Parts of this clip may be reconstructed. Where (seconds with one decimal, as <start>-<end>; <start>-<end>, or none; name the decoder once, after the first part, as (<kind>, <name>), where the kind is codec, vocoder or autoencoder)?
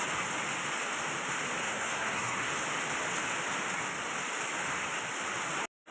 1.6-2.5 (codec, SNAC)